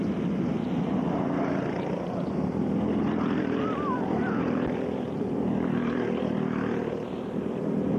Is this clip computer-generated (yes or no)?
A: no